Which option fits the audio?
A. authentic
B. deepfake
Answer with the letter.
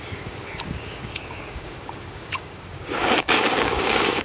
B